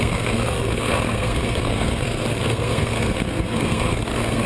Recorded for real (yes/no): no